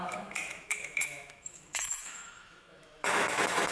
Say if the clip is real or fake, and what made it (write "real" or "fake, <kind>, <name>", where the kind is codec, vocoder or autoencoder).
fake, autoencoder, DAC-VAE